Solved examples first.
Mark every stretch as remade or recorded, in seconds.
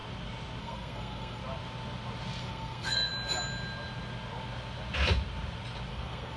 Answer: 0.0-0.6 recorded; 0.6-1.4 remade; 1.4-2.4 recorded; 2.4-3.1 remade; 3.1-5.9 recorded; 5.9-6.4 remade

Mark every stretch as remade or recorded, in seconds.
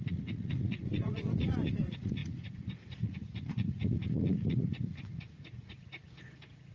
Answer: 0.0-6.7 remade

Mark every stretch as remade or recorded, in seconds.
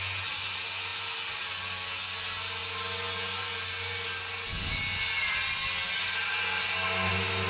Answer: 0.0-7.5 recorded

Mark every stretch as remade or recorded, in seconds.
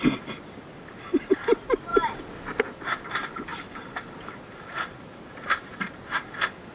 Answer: 0.0-3.5 recorded; 3.5-6.0 remade; 6.0-6.7 recorded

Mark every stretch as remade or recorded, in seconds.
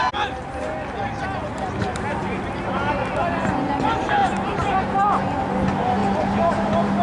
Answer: 0.0-6.0 recorded; 6.0-6.5 remade; 6.5-7.0 recorded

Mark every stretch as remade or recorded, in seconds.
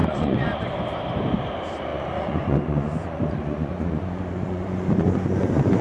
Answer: 0.0-0.6 remade; 0.6-1.9 recorded; 1.9-5.8 remade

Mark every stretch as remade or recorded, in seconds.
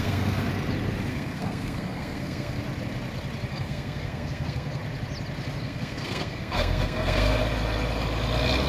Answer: 0.0-0.5 remade; 0.5-1.1 recorded; 1.1-2.6 remade; 2.6-3.5 recorded; 3.5-4.8 remade; 4.8-5.6 recorded; 5.6-7.4 remade; 7.4-8.7 recorded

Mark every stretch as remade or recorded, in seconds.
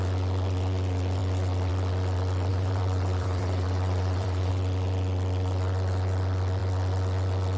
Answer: 0.0-2.5 recorded; 2.5-4.5 remade; 4.5-7.6 recorded